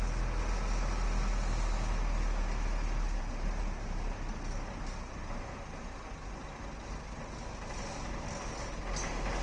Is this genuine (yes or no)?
yes